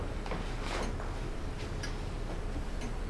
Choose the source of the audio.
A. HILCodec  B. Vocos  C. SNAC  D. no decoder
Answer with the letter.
D